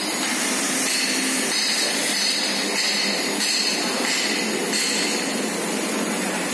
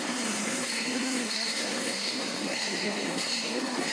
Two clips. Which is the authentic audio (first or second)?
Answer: first